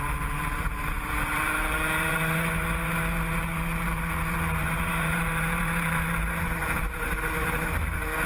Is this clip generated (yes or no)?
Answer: yes